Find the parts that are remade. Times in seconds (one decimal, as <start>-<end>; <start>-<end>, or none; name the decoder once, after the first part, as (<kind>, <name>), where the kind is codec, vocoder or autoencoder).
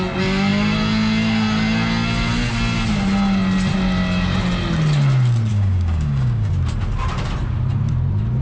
5.5-6.5 (codec, DAC)